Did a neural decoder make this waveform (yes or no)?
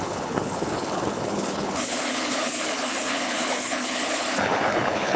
yes